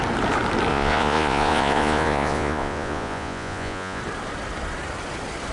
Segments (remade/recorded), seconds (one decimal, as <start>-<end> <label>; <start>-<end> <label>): 0.0-0.7 recorded; 0.7-4.0 remade; 4.0-5.5 recorded